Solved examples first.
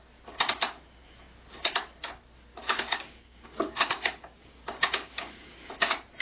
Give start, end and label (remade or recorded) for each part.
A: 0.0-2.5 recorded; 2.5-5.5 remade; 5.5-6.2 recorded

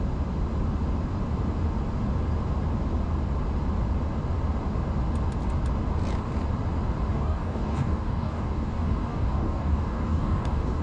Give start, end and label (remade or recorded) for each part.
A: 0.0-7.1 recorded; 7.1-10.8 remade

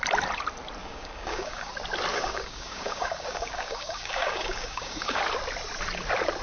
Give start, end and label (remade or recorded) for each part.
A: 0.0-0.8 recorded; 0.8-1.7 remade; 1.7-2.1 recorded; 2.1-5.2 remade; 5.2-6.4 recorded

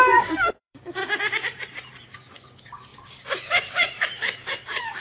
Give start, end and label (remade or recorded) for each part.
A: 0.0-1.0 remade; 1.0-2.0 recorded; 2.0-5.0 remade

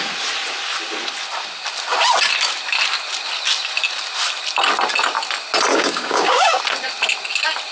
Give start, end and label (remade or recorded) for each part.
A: 0.0-5.7 recorded; 5.7-6.6 remade; 6.6-7.7 recorded